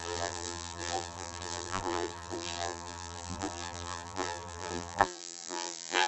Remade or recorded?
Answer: remade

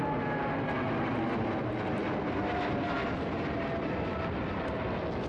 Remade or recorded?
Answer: recorded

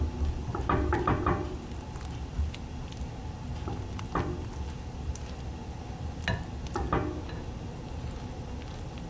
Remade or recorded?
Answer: recorded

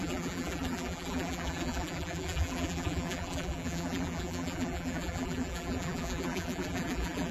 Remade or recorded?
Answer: remade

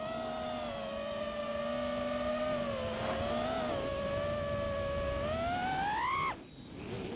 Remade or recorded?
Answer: recorded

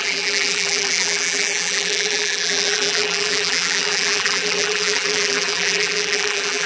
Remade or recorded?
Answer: remade